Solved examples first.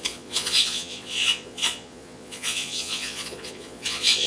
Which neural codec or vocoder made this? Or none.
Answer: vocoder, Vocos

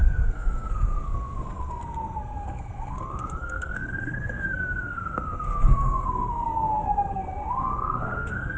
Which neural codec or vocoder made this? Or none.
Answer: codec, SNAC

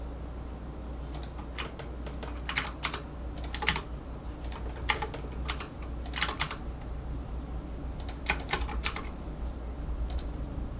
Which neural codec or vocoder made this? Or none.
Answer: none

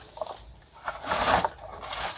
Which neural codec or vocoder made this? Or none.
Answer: none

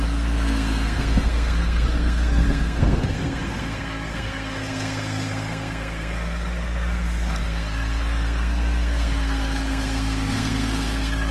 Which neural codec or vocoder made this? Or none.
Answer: codec, SNAC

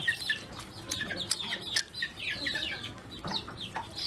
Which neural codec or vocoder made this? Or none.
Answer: vocoder, BigVGAN v2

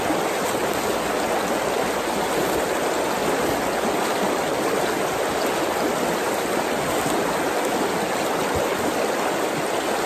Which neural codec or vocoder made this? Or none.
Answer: none